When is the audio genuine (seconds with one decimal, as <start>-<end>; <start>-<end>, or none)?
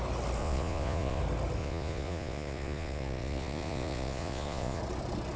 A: 0.0-0.4; 1.2-1.6; 4.8-5.4